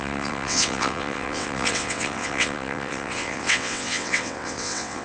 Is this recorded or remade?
remade